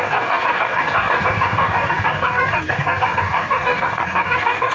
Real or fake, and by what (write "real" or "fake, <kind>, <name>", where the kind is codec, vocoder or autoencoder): fake, codec, DAC